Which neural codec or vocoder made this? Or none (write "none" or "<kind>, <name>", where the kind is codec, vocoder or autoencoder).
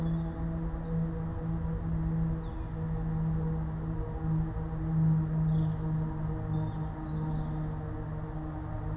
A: none